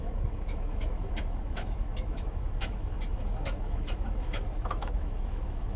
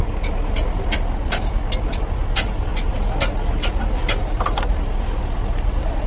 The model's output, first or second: first